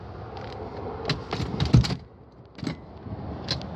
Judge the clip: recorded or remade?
recorded